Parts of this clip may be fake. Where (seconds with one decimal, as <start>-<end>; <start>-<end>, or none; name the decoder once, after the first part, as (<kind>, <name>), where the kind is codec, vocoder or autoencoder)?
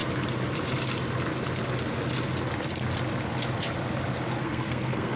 4.4-5.2 (codec, SNAC)